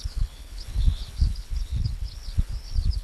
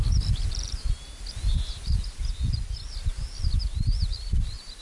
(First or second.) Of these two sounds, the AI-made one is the first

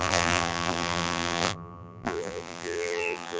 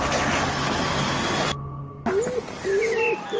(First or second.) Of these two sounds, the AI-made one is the first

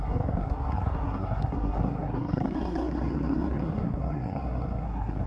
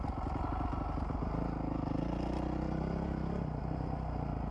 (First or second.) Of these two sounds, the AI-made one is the first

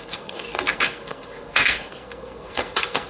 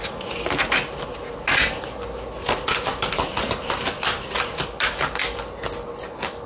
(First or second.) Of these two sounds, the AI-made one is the first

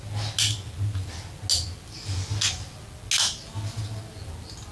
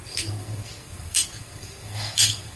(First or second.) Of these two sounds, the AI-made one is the second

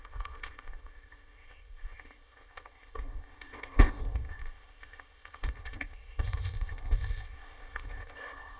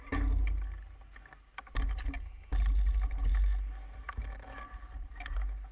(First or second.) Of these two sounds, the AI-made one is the first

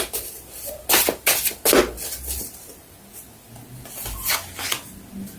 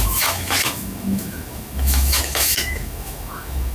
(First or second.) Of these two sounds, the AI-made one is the second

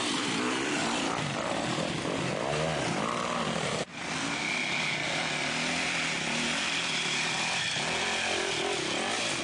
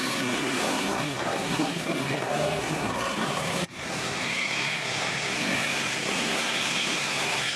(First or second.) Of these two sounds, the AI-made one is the second